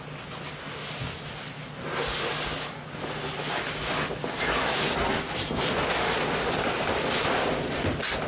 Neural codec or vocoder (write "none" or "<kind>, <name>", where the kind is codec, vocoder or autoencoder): none